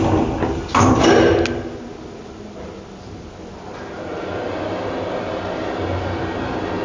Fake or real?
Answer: real